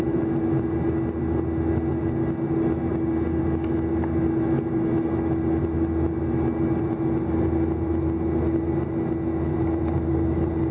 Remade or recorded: recorded